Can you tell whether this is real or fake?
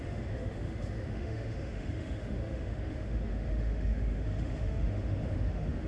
fake